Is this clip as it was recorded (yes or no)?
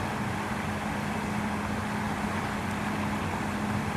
yes